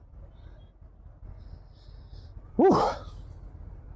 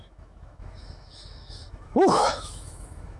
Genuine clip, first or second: first